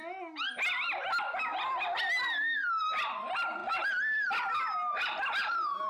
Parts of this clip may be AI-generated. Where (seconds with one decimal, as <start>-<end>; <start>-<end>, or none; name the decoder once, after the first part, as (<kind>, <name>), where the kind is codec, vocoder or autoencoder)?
none